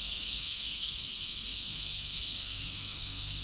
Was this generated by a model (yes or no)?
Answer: yes